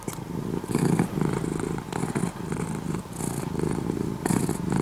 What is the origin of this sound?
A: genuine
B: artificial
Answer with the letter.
A